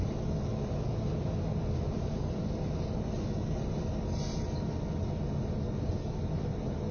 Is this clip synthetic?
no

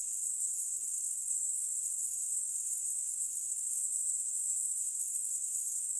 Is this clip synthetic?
yes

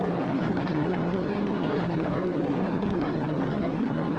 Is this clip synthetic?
yes